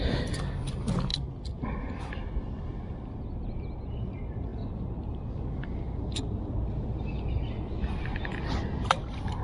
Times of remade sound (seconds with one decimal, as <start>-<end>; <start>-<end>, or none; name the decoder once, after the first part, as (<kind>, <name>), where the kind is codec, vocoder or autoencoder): none

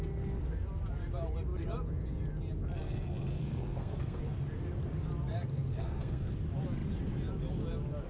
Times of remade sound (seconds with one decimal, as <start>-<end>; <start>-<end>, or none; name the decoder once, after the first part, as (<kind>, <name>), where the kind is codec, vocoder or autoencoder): 3.3-4.2 (codec, SNAC); 5.5-6.3

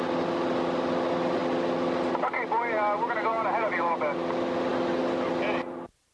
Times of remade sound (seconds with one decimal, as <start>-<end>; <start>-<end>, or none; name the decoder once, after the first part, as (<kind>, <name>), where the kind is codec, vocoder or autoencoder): none

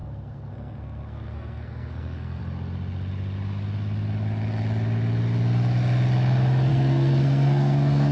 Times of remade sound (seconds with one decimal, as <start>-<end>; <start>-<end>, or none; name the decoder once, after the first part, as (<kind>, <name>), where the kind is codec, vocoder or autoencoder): 0.0-2.4 (codec, SNAC); 6.7-8.1

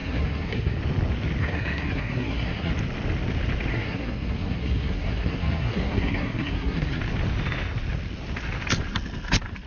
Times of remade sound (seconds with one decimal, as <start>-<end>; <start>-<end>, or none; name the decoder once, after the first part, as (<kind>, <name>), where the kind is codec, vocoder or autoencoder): 0.0-0.8 (codec, SNAC); 1.4-2.7; 3.7-7.0

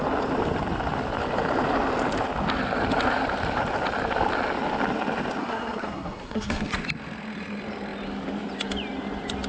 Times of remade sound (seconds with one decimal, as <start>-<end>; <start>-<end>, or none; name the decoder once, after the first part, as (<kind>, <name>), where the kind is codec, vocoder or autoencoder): 5.4-6.7 (codec, SNAC)

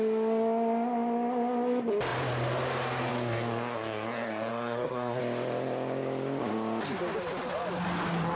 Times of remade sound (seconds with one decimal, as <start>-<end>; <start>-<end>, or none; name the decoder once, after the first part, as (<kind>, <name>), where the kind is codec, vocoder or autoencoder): 4.5-5.2 (codec, SNAC)

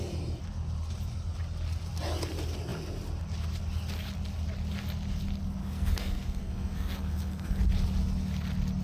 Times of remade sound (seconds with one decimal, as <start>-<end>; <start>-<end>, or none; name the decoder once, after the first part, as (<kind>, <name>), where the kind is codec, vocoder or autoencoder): 5.6-7.6 (codec, SNAC)